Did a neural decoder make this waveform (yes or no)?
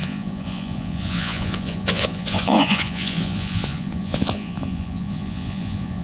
yes